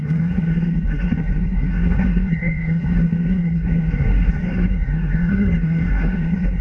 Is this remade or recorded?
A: remade